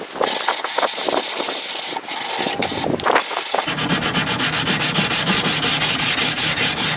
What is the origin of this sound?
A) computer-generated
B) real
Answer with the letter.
B